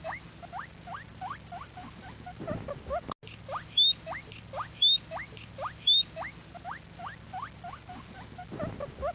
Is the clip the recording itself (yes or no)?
yes